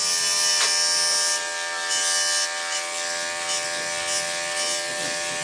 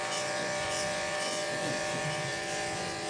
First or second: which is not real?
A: second